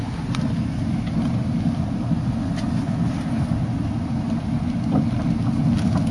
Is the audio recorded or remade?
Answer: recorded